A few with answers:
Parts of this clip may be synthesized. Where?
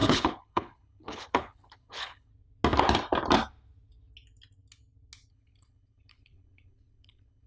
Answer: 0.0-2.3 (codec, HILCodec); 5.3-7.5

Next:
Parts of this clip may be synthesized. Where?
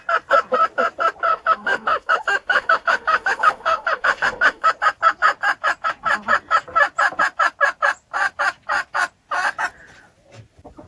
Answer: 1.3-4.7 (autoencoder, DAC-VAE)